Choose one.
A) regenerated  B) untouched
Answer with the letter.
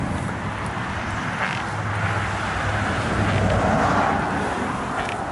B